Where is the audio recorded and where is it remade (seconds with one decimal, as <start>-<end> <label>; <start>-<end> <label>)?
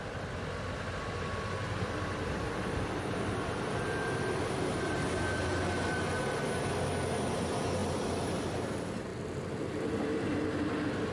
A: 0.0-1.6 recorded; 1.6-4.9 remade; 4.9-9.1 recorded; 9.1-10.6 remade; 10.6-11.1 recorded